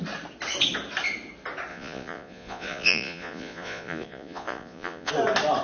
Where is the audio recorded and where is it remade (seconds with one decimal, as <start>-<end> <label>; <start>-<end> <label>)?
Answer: 0.0-1.7 recorded; 1.7-5.1 remade; 5.1-5.6 recorded